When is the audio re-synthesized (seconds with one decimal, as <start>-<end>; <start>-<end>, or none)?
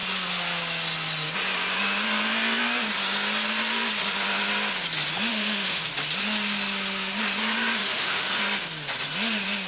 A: 5.3-5.9; 7.8-8.4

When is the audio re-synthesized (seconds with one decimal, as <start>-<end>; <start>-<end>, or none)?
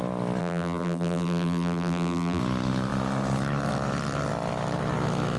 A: 0.4-2.4